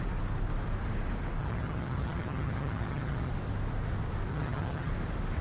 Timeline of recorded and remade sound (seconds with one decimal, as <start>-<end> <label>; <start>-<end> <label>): 0.0-1.4 recorded; 1.4-3.3 remade; 3.3-4.3 recorded; 4.3-4.9 remade; 4.9-5.4 recorded